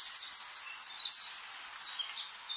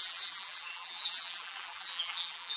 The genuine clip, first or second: first